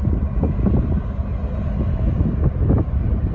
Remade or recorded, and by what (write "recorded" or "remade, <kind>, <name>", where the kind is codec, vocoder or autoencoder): recorded